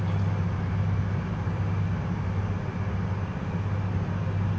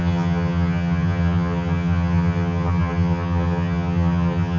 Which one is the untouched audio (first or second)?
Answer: first